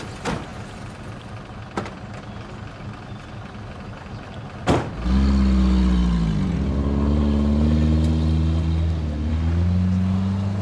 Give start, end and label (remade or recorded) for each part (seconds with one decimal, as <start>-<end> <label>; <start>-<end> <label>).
0.0-10.6 recorded